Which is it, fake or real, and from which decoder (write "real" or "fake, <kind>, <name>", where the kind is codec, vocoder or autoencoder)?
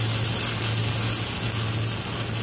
real